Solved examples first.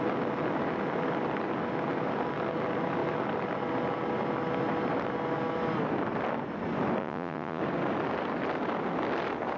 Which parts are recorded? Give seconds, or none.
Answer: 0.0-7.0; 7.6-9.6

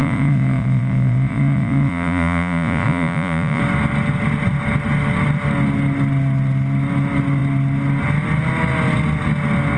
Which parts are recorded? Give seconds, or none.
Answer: 3.6-9.8